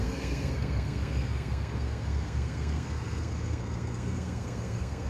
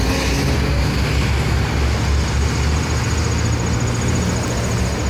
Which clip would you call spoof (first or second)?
first